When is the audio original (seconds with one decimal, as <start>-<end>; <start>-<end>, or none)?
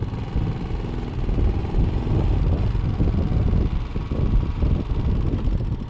0.0-1.6; 2.1-3.9; 4.9-5.9